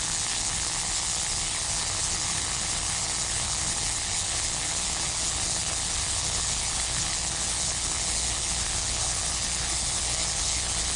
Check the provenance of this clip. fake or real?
fake